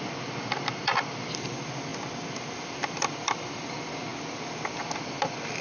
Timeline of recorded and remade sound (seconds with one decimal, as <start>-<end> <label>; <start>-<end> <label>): 0.0-1.9 remade; 1.9-2.4 recorded; 2.4-4.1 remade; 4.1-4.8 recorded; 4.8-5.6 remade